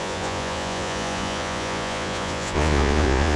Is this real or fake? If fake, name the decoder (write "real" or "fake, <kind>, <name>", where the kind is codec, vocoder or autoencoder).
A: fake, vocoder, Vocos